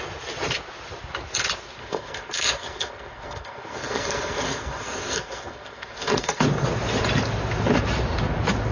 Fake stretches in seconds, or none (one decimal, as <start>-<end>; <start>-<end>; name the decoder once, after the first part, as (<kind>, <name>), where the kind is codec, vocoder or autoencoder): 1.8-6.4 (codec, SNAC)